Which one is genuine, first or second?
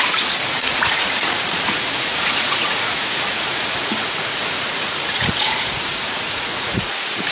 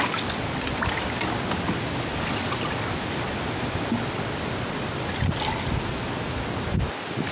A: second